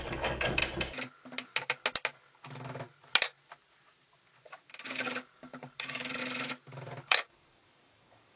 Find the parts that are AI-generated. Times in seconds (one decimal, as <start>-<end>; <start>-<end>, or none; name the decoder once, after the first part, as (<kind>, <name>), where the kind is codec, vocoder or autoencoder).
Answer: 0.0-0.6 (codec, DAC); 4.8-6.2; 7.0-8.4